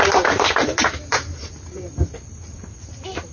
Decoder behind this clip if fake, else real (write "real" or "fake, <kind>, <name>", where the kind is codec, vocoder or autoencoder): fake, vocoder, BigVGAN v2